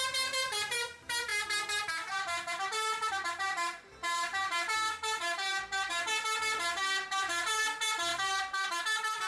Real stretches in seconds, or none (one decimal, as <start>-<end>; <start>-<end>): 0.0-9.3